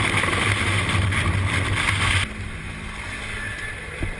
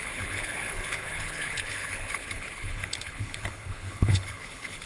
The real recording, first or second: first